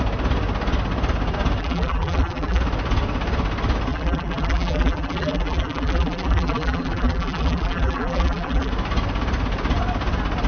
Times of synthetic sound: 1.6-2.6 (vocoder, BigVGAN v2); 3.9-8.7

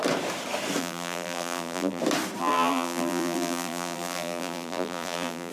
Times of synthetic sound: 0.8-2.0 (vocoder, BigVGAN v2); 2.4-5.5

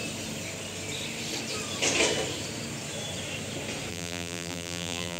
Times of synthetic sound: 3.9-5.2 (vocoder, BigVGAN v2)

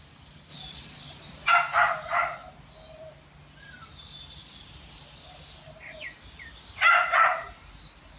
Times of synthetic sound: 0.5-1.5 (vocoder, BigVGAN v2)

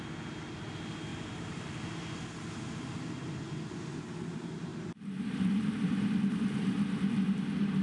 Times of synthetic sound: 1.1-1.7 (vocoder, BigVGAN v2); 4.7-6.7

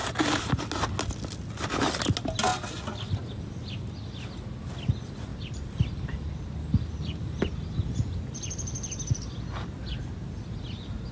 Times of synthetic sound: 5.3-10.5 (vocoder, BigVGAN v2)